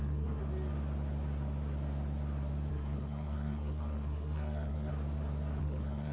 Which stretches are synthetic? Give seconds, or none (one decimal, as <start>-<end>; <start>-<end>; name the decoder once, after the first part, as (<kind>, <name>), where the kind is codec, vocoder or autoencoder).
0.0-0.4 (codec, SNAC); 2.7-4.9; 5.6-6.1